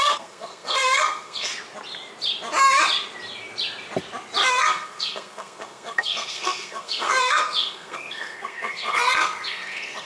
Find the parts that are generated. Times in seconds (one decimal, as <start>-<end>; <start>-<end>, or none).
0.0-1.5; 4.5-10.1